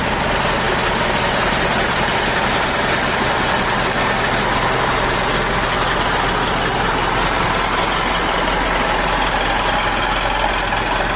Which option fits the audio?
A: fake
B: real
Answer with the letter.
B